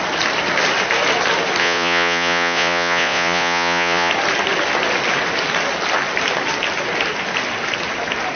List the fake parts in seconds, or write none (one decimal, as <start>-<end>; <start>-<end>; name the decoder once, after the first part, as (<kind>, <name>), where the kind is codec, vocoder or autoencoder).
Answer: 1.6-4.1 (vocoder, Vocos)